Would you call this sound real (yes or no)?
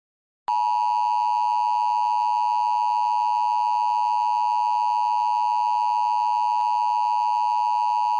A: yes